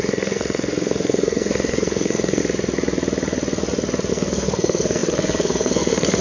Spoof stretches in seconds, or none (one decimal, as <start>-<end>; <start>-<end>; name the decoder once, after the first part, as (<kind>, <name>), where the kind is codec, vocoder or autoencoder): 0.0-2.4 (codec, SNAC); 4.1-6.2